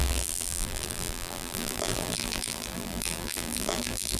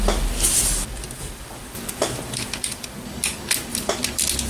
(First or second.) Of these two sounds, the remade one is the first